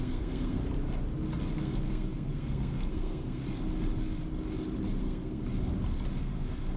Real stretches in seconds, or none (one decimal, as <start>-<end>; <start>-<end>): 0.6-1.6; 3.4-5.0; 5.4-6.2